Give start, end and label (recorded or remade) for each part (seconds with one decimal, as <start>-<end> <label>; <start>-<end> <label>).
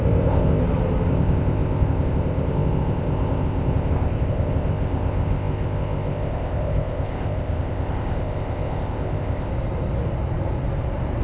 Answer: 0.0-0.6 remade; 0.6-1.1 recorded; 1.1-9.5 remade; 9.5-11.2 recorded